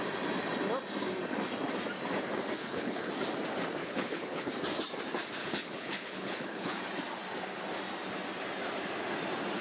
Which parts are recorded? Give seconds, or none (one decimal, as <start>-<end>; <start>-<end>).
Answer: 0.0-2.6; 3.1-3.8; 4.5-5.4; 6.8-9.6